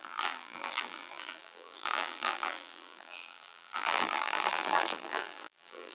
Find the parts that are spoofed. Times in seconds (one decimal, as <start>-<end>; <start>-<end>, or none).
0.0-5.9